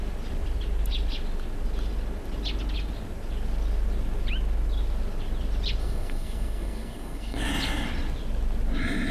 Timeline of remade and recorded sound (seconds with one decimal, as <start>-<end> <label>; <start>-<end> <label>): 0.0-5.8 recorded; 5.8-7.5 remade; 7.5-9.1 recorded